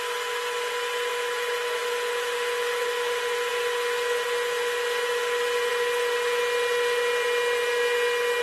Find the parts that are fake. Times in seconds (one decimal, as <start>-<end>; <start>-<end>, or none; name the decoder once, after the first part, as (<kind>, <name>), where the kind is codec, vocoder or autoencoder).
none